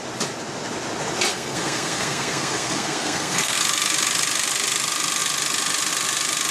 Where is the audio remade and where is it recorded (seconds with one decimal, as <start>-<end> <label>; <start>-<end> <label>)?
0.0-1.3 recorded; 1.3-3.6 remade; 3.6-6.5 recorded